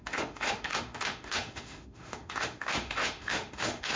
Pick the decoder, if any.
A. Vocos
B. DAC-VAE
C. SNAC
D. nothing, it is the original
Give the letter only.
B